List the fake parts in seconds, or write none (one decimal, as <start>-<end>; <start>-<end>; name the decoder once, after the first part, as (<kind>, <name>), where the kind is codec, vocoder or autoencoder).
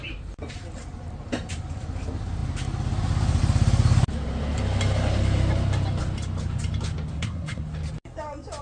7.1-7.6 (codec, SNAC)